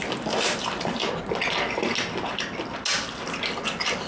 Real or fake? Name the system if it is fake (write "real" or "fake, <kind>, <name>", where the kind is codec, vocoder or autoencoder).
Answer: real